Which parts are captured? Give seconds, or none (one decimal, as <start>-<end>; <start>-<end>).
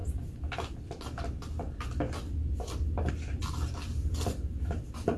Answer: none